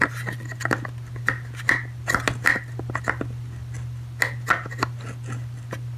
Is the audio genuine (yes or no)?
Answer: yes